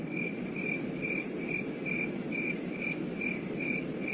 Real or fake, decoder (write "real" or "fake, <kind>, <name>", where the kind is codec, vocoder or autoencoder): real